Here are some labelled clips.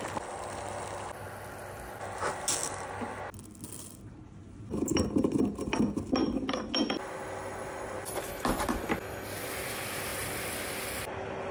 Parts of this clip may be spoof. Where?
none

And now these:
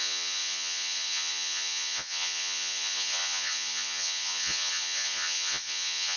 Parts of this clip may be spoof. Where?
0.0-6.2 (vocoder, Vocos)

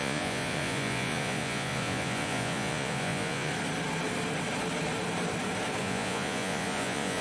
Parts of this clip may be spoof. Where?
0.0-3.5 (vocoder, Vocos); 5.8-7.2

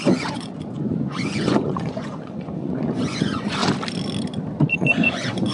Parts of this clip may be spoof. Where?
0.0-3.6 (vocoder, Vocos); 4.7-5.5

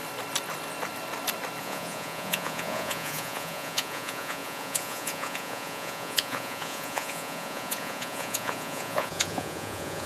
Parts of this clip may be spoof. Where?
1.6-10.1 (vocoder, Vocos)